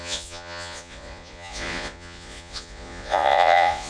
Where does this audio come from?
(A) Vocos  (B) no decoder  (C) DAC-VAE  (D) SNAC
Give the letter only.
A